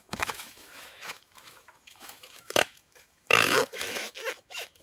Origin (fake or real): fake